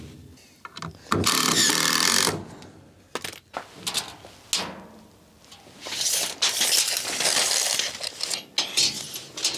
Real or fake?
real